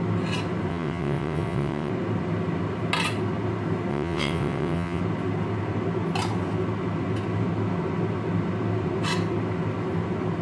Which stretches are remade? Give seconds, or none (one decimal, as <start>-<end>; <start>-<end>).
0.7-1.9; 3.9-5.0